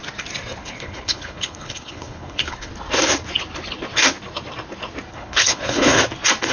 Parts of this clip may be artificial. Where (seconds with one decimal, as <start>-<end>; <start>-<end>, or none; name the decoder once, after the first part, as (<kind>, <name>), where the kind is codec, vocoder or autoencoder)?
0.6-2.7 (codec, HILCodec); 5.1-6.0